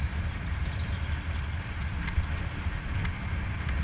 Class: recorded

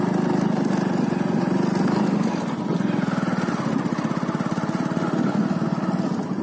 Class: recorded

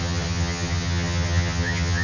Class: remade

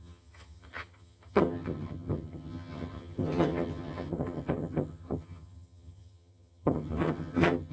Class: remade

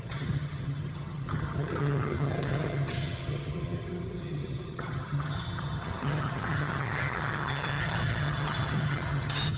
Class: remade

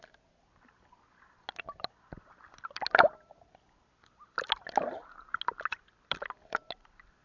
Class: recorded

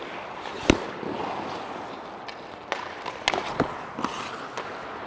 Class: recorded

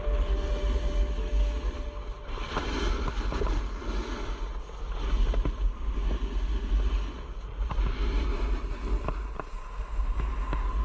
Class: recorded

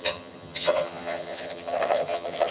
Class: remade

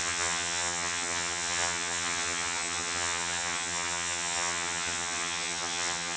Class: remade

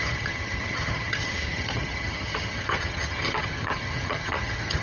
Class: remade